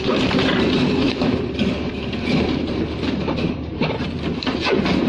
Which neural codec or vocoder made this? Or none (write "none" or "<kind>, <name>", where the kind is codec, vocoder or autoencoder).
vocoder, BigVGAN v2